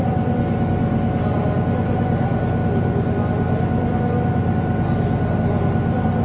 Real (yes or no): yes